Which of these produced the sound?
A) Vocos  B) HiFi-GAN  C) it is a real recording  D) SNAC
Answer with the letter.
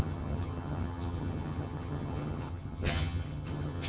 B